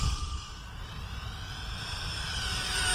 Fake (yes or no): no